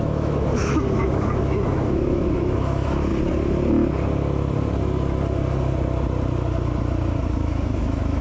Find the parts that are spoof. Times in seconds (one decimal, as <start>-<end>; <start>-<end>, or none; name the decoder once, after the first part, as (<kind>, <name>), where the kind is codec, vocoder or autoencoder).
0.0-3.1 (autoencoder, DAC-VAE); 7.3-8.2